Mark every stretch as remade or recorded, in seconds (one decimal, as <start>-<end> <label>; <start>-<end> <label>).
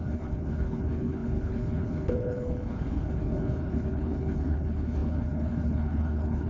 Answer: 0.0-6.5 remade